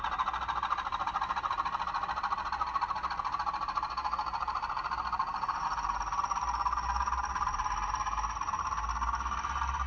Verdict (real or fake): real